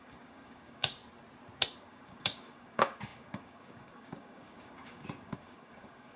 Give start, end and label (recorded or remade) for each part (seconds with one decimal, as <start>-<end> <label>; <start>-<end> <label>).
0.0-1.0 remade; 1.0-1.8 recorded; 1.8-6.2 remade